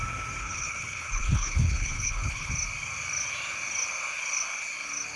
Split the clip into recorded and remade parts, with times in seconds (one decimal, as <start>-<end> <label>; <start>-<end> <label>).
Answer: 0.0-0.4 recorded; 0.4-2.5 remade; 2.5-5.2 recorded